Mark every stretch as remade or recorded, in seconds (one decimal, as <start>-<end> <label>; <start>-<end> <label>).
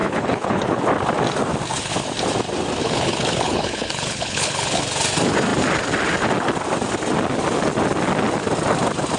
0.0-0.8 remade; 0.8-2.8 recorded; 2.8-4.8 remade; 4.8-9.2 recorded